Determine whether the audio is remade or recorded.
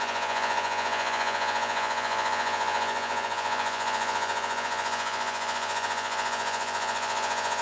remade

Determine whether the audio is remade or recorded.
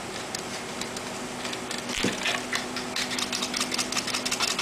recorded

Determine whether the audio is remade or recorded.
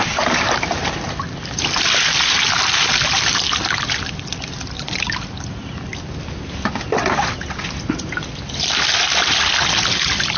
recorded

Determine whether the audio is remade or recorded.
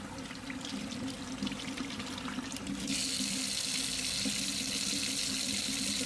recorded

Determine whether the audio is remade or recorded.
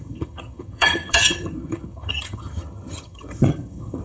remade